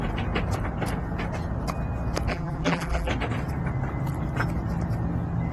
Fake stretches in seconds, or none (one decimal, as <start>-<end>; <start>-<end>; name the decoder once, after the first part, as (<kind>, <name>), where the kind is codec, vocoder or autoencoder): 2.3-3.1 (vocoder, BigVGAN v2)